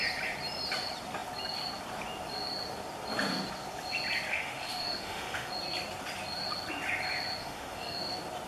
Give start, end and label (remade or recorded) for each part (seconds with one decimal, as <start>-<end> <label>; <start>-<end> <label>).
0.0-4.3 recorded; 4.3-5.5 remade; 5.5-7.4 recorded; 7.4-8.0 remade; 8.0-8.5 recorded